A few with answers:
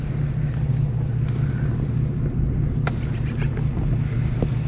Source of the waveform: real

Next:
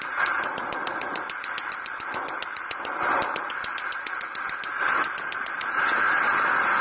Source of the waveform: real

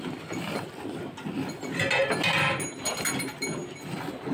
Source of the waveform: real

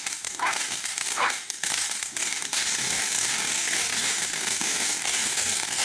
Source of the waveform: fake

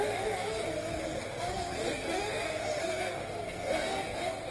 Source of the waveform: fake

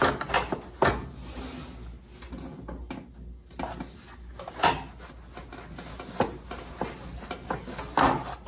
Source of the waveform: real